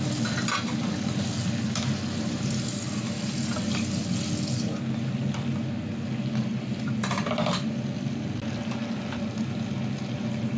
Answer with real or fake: real